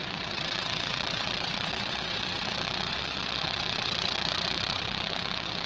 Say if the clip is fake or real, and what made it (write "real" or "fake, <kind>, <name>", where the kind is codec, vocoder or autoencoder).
fake, vocoder, WaveNeXt